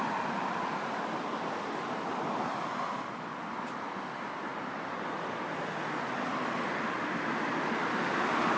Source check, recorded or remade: recorded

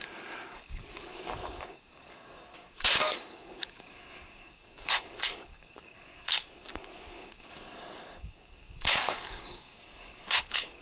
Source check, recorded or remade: remade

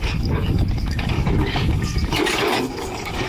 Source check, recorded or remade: remade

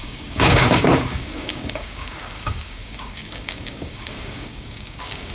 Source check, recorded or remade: remade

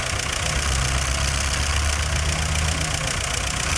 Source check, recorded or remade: recorded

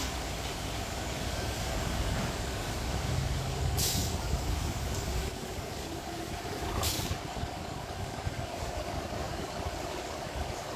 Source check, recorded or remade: remade